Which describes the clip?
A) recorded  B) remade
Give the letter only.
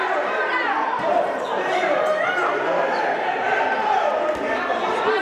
B